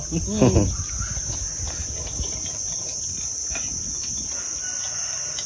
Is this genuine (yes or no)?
yes